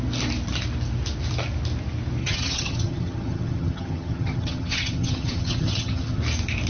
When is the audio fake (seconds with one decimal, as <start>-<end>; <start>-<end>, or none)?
2.2-6.2